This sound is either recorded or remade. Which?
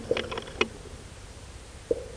recorded